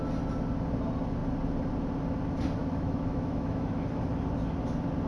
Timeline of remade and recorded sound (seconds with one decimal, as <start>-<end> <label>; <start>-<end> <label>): 0.0-2.6 recorded; 2.6-3.7 remade; 3.7-5.1 recorded